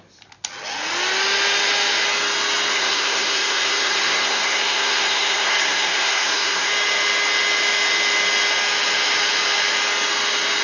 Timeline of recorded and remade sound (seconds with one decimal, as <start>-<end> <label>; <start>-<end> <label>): 0.0-2.7 recorded; 2.7-6.7 remade; 6.7-10.6 recorded